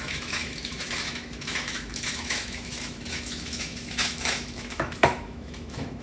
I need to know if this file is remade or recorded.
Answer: remade